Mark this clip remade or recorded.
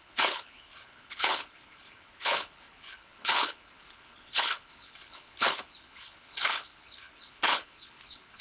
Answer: remade